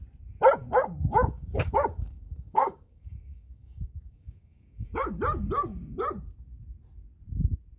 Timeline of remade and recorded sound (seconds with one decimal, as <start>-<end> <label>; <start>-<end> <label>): 0.0-0.6 recorded; 0.6-5.2 remade; 5.2-7.8 recorded